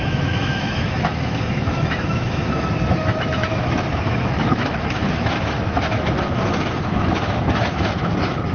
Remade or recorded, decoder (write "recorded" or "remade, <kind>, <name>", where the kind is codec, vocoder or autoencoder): remade, autoencoder, DAC-VAE